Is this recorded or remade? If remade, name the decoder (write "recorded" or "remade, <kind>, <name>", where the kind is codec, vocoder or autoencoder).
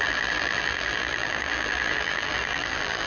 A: remade, vocoder, BigVGAN v2